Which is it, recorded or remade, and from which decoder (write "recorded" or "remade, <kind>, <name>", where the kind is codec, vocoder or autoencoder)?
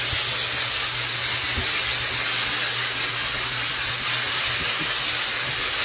recorded